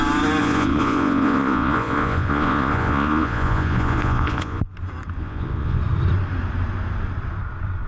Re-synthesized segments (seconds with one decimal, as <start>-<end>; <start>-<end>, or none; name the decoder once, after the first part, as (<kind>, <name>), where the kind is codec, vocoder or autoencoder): 0.4-4.6 (vocoder, Vocos); 5.2-5.8